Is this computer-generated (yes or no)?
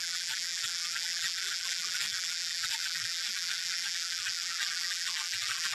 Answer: yes